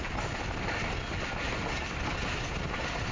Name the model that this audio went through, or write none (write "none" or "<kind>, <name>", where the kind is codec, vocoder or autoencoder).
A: none